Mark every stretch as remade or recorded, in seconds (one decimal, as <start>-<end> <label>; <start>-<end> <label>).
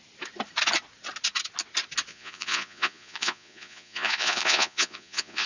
0.0-2.1 recorded; 2.1-5.5 remade